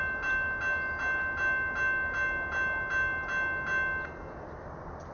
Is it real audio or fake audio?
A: real